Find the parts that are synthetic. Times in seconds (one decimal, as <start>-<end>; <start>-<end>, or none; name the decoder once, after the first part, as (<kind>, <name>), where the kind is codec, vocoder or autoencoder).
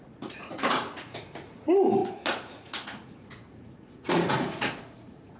0.0-5.4 (vocoder, Vocos)